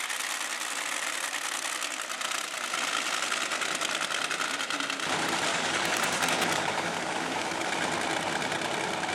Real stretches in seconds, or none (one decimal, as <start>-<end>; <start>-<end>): 0.0-5.5; 7.7-9.1